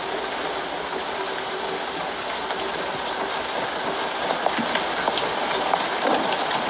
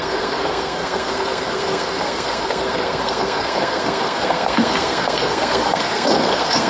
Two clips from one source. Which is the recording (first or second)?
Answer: first